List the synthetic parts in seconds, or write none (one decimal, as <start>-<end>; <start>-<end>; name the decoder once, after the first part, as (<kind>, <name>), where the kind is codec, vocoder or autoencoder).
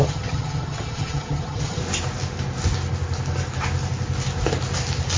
0.0-1.8 (vocoder, HiFi-GAN)